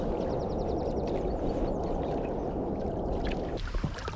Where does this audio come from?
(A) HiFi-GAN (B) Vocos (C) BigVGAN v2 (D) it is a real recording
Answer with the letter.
D